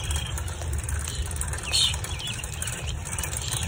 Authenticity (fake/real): fake